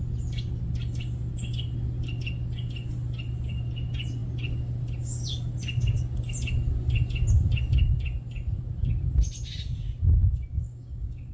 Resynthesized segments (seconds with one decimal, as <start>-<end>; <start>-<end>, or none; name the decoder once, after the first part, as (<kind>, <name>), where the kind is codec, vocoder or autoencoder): 10.5-11.3 (codec, DAC)

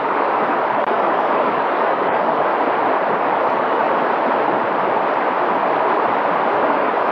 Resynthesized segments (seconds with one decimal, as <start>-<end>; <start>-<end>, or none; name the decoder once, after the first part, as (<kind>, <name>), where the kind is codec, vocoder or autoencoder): 0.0-2.5 (codec, DAC); 3.1-3.8; 6.5-7.1